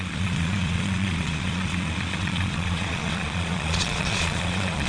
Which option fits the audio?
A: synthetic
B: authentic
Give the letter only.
A